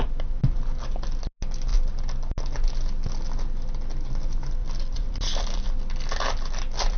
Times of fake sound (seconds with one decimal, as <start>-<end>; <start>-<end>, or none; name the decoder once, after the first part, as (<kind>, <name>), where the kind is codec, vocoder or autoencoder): 4.6-5.6 (vocoder, BigVGAN v2)